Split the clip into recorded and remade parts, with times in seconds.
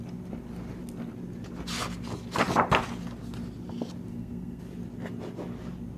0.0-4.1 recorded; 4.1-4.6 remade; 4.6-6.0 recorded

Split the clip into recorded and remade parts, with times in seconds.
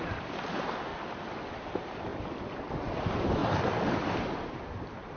0.0-0.9 remade; 0.9-1.6 recorded; 1.6-2.1 remade; 2.1-2.7 recorded; 2.7-3.4 remade; 3.4-4.3 recorded; 4.3-5.2 remade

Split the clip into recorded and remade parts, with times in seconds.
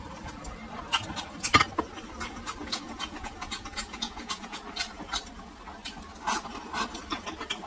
0.0-2.6 recorded; 2.6-4.6 remade; 4.6-7.7 recorded